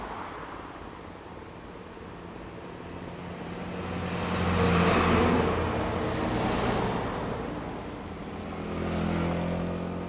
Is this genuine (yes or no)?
yes